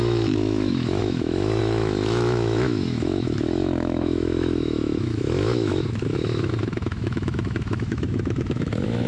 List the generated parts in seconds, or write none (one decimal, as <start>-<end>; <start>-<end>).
0.0-9.1